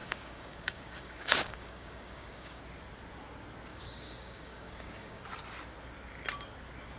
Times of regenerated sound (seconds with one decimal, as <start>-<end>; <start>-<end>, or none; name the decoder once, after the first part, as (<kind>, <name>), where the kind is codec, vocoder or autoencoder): 0.0-2.6 (codec, DAC); 3.7-5.2